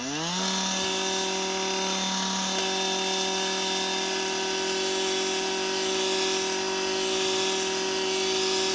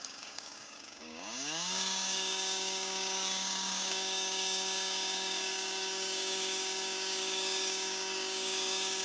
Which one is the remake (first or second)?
second